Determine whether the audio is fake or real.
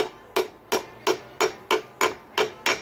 real